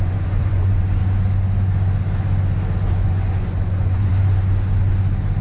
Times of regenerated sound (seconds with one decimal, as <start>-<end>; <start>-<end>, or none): 0.0-1.0; 2.9-4.1